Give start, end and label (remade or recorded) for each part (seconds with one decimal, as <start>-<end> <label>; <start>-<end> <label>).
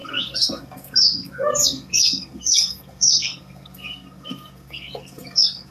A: 0.0-5.7 remade